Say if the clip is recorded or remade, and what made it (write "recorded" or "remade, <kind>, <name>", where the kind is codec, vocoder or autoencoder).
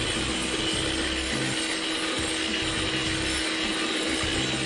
recorded